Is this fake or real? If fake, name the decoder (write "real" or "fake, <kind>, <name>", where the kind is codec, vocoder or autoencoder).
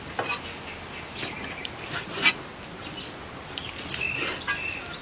real